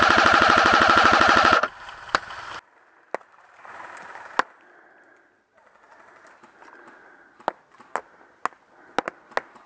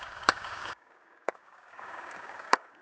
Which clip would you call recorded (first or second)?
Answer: first